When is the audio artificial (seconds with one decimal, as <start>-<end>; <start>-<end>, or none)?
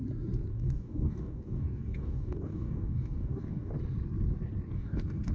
0.5-3.7; 4.7-5.3